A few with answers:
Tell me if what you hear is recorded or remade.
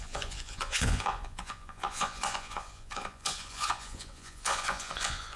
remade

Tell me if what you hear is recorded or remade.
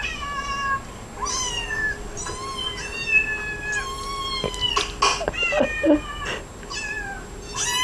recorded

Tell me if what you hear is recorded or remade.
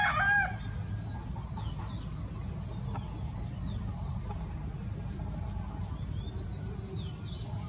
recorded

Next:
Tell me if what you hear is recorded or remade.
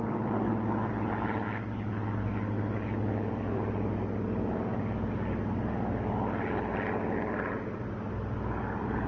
recorded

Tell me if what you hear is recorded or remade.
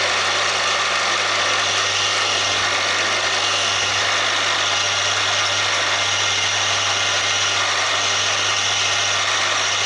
recorded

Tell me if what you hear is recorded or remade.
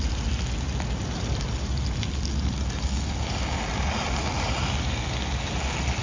recorded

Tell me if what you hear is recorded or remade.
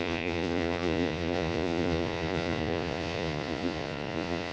remade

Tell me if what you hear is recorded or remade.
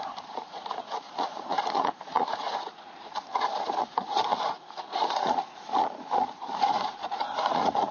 remade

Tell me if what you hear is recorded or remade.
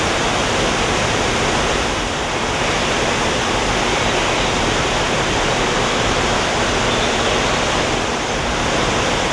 recorded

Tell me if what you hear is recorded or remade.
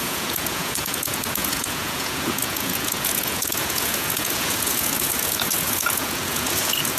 remade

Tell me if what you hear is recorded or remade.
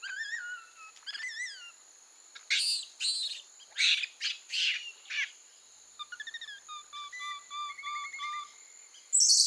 recorded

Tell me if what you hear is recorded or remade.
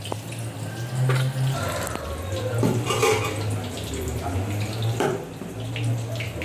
recorded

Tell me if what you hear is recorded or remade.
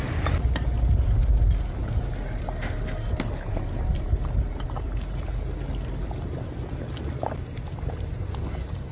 recorded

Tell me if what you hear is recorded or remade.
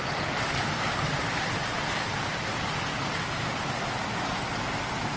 recorded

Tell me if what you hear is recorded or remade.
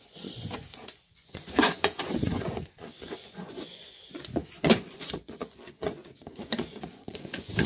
remade